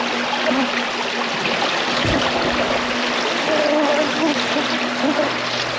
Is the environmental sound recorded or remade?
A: recorded